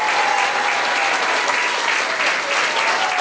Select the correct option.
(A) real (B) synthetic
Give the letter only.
A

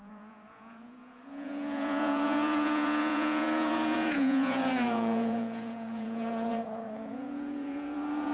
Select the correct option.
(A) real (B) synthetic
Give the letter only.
B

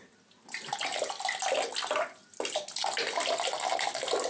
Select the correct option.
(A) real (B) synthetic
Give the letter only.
A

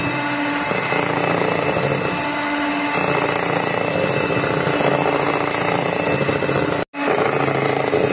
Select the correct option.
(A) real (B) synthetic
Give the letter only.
A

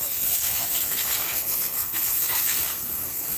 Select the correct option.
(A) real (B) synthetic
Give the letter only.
B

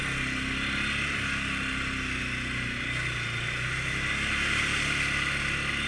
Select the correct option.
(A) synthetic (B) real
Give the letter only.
B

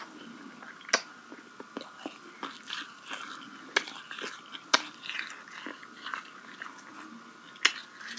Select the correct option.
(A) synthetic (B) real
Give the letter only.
B